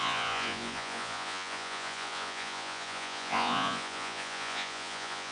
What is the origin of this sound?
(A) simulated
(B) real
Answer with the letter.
A